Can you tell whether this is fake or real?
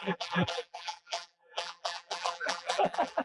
fake